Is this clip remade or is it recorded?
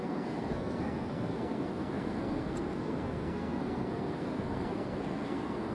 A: remade